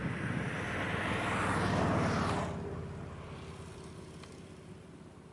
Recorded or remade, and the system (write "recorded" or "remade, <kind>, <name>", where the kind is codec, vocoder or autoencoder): recorded